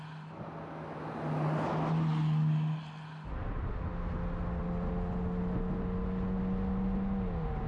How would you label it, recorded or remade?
recorded